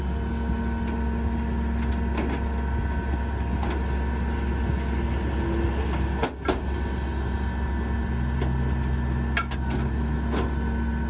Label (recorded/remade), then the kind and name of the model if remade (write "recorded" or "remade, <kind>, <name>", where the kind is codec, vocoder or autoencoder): recorded